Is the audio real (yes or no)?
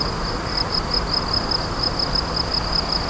yes